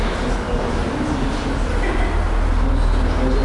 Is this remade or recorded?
recorded